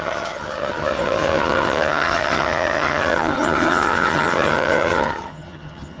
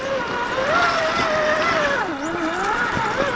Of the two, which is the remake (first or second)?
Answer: first